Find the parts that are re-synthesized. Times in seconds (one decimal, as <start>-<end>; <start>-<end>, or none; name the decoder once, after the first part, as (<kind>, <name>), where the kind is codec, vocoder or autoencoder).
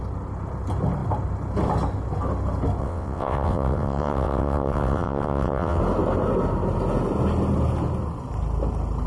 2.8-5.8 (vocoder, WaveNeXt)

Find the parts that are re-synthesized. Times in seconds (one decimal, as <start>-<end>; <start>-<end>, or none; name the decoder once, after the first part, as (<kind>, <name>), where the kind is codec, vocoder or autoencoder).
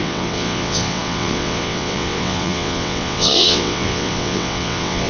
0.0-5.1 (vocoder, WaveNeXt)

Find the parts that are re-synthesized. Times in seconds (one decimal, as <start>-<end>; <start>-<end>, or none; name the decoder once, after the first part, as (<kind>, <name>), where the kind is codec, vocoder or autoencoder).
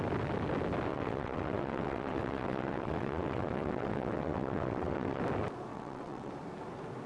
0.9-5.2 (vocoder, WaveNeXt); 5.7-6.3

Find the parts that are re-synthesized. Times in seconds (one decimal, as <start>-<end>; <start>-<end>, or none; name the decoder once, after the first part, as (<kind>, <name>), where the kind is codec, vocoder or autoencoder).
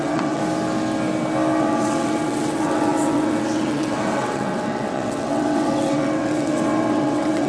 0.0-0.4 (vocoder, WaveNeXt); 1.6-7.5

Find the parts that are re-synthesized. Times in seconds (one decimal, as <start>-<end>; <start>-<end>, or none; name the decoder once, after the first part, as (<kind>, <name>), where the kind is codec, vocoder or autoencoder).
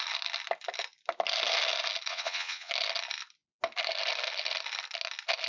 2.1-2.7 (vocoder, WaveNeXt)